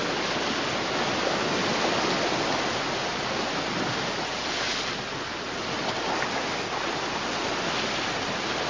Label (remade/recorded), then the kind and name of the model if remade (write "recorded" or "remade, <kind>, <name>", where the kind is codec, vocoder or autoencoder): recorded